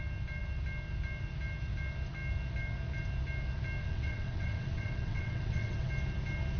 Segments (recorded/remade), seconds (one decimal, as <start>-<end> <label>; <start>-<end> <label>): 0.0-3.8 recorded; 3.8-5.9 remade; 5.9-6.6 recorded